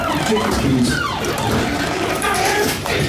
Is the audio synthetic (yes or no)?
yes